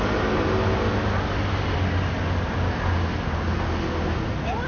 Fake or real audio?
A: real